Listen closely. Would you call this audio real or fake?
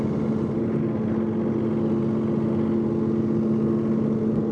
real